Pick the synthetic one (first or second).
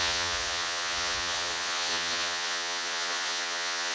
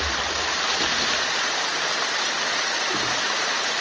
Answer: first